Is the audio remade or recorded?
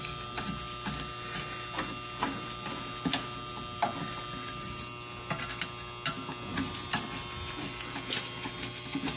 recorded